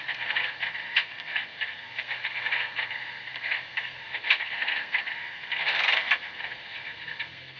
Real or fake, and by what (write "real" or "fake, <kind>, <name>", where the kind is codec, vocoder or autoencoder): fake, codec, SNAC